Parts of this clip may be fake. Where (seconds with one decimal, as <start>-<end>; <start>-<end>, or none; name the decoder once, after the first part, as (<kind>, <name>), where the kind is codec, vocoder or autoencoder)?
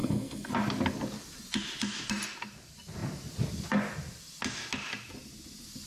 0.0-0.5 (codec, SNAC)